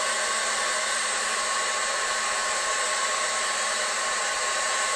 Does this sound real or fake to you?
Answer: fake